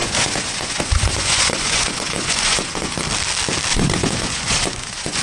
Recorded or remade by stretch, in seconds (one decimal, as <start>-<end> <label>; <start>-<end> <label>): 0.0-3.0 remade; 3.0-3.7 recorded; 3.7-5.2 remade